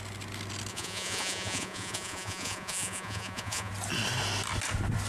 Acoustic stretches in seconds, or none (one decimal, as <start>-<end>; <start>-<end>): 0.0-0.7; 3.7-5.1